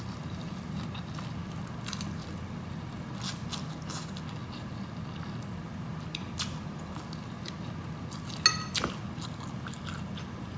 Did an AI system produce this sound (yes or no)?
no